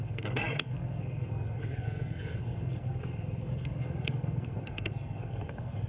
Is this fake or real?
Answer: fake